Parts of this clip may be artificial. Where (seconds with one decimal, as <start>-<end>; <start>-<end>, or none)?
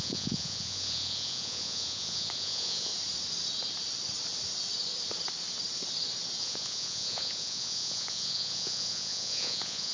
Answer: 0.0-2.9; 6.4-9.9